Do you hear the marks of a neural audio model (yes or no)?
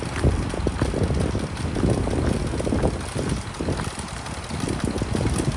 no